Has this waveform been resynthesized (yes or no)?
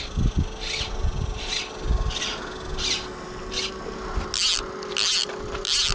no